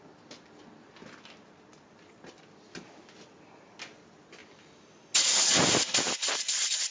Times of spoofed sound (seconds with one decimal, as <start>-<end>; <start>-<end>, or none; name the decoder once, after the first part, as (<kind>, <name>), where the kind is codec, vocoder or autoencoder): none